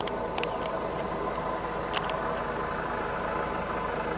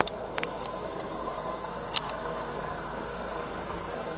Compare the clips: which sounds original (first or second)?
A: first